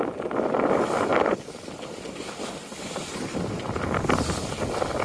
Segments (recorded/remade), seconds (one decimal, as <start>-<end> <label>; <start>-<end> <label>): 0.0-5.0 recorded